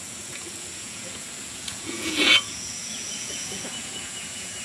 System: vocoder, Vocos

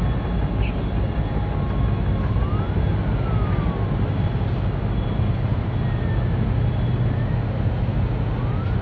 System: none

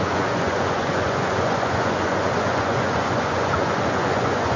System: vocoder, Vocos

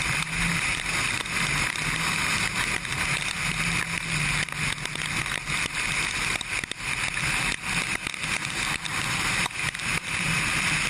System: none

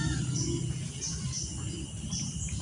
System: none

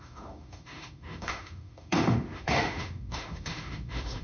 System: autoencoder, DAC-VAE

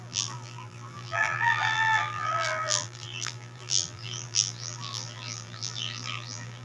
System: vocoder, BigVGAN v2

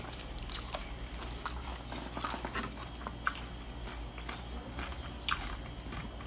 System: none